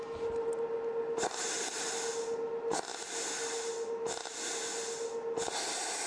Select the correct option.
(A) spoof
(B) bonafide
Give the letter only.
B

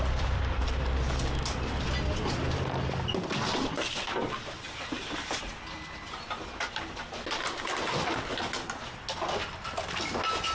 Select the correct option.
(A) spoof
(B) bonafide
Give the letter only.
B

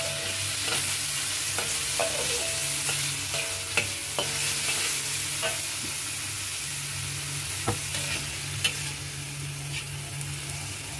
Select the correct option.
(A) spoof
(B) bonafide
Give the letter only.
B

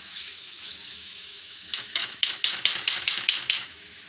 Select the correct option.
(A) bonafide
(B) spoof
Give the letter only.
B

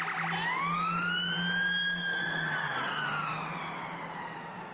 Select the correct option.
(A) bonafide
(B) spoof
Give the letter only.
A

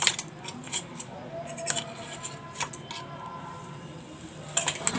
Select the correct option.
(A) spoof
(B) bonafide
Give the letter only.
B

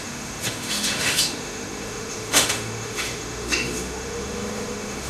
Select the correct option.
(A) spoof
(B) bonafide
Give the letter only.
A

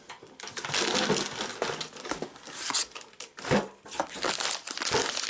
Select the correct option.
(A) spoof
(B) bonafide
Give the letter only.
B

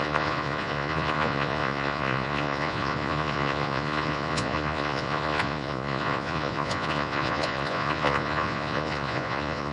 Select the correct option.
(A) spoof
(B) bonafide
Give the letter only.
A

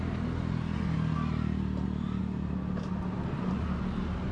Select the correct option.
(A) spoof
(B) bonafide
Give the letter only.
B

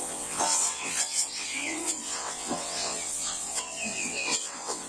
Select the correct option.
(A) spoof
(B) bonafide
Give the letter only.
A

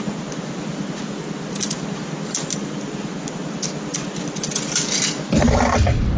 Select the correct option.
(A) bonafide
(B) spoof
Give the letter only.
A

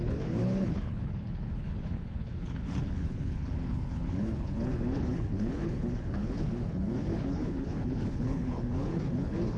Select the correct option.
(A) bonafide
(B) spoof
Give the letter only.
B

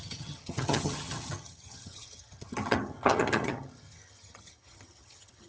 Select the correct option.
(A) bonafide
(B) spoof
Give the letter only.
B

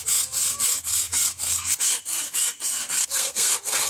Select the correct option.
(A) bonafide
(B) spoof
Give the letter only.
B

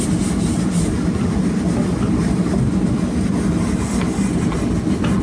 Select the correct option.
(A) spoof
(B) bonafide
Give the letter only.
B